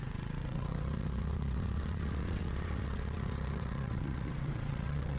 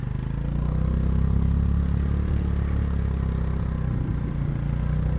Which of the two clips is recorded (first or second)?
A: second